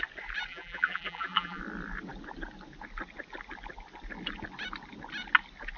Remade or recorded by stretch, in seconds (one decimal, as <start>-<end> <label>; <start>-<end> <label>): 0.0-0.5 recorded; 0.5-1.6 remade; 1.6-5.8 recorded